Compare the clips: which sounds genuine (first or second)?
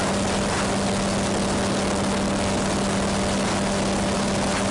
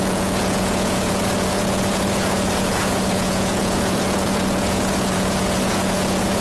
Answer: first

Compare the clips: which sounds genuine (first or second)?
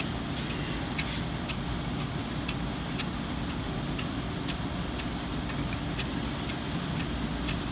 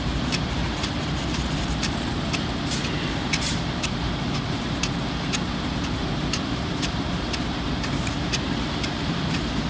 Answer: first